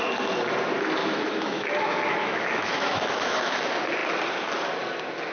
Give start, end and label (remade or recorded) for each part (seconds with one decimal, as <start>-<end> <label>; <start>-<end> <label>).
0.0-1.0 recorded; 1.0-3.6 remade; 3.6-5.3 recorded